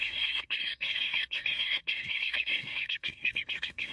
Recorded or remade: remade